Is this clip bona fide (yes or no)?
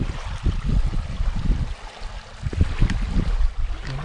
yes